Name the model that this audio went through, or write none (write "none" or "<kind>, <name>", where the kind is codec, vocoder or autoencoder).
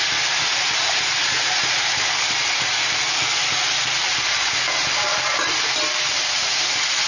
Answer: none